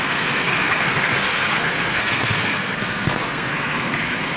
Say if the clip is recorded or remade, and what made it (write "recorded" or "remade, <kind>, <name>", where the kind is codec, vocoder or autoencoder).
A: remade, codec, SNAC